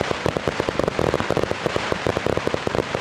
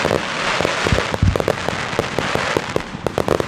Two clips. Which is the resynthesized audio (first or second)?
first